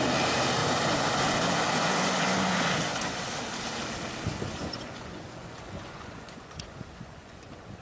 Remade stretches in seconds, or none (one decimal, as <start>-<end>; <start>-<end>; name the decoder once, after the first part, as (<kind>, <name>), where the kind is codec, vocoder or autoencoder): 0.6-3.2 (vocoder, Vocos); 4.3-7.8